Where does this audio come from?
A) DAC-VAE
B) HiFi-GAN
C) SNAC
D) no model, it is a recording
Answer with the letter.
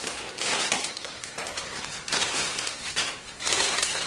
C